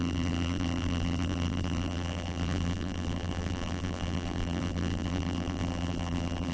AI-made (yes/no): yes